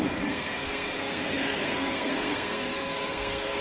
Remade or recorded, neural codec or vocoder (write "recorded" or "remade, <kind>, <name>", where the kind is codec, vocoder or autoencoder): remade, codec, SNAC